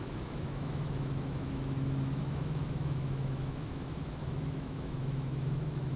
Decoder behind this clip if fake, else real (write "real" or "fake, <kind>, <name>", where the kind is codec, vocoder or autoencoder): fake, autoencoder, DAC-VAE